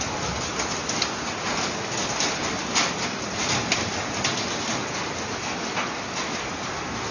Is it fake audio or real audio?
real